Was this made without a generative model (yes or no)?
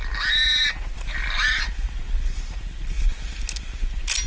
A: yes